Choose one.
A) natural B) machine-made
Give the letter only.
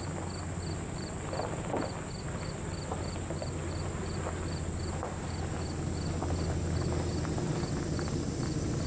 A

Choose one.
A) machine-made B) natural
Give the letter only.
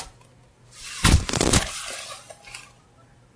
B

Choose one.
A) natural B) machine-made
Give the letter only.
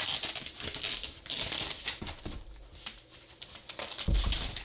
A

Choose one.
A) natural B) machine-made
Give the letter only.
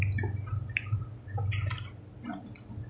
A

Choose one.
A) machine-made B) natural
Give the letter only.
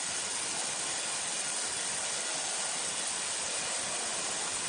B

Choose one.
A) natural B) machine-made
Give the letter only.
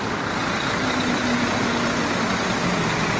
A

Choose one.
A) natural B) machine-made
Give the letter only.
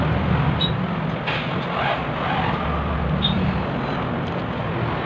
A